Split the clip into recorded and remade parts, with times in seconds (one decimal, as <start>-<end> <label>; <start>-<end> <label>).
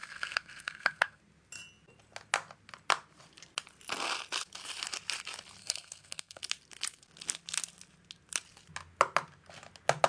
0.0-1.2 remade; 1.2-5.6 recorded; 5.6-6.4 remade; 6.4-10.1 recorded